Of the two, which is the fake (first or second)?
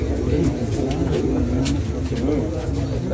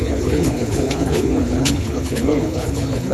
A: second